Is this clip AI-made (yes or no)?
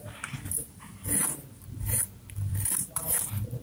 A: yes